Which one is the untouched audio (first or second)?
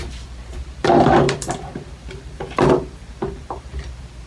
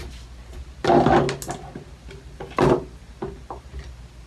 second